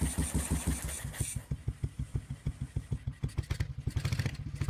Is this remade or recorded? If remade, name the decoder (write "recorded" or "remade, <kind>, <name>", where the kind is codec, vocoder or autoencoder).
recorded